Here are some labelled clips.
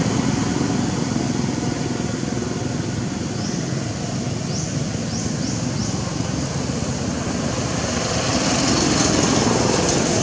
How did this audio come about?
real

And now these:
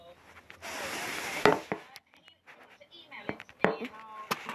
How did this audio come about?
real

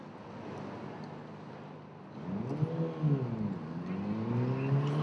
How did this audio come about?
real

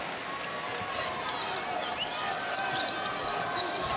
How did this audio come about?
real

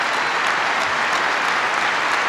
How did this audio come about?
real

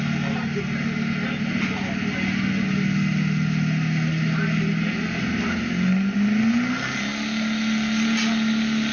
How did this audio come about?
real